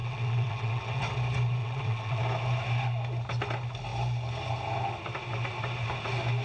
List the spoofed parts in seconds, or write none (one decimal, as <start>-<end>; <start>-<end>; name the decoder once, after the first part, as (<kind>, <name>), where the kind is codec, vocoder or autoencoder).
0.0-1.0 (vocoder, WaveNeXt); 1.6-2.2